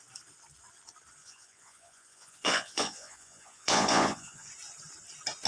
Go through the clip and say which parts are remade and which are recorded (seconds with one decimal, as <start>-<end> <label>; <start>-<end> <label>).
0.0-1.2 recorded; 1.2-4.5 remade; 4.5-5.5 recorded

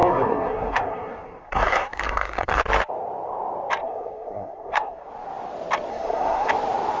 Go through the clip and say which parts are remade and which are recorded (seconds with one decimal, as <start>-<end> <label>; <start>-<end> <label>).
0.0-2.6 remade; 2.6-3.8 recorded; 3.8-5.1 remade; 5.1-5.9 recorded; 5.9-6.5 remade; 6.5-7.0 recorded

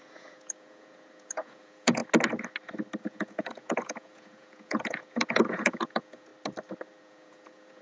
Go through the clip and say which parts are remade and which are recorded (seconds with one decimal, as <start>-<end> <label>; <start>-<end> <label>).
0.0-2.0 remade; 2.0-3.0 recorded; 3.0-6.3 remade; 6.3-7.0 recorded; 7.0-7.8 remade

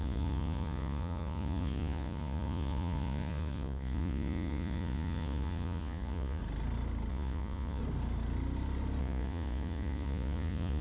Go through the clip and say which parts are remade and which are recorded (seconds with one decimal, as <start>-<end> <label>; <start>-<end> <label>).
0.0-6.4 remade; 6.4-7.1 recorded; 7.1-7.8 remade; 7.8-9.0 recorded; 9.0-10.8 remade